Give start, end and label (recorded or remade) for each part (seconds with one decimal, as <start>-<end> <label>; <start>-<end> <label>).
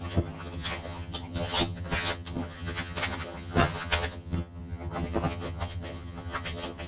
0.0-6.9 remade